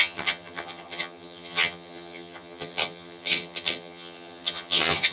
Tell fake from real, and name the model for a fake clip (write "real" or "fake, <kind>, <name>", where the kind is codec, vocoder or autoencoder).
fake, vocoder, HiFi-GAN